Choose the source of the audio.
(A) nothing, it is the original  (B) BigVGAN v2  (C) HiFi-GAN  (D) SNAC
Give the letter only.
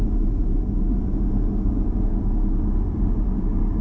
A